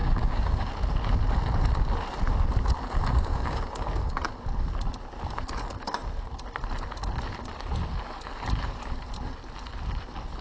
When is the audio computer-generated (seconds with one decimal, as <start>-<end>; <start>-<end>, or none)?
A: 0.0-0.7; 3.3-4.3